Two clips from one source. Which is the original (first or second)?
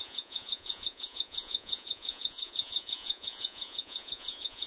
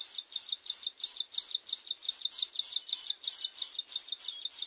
second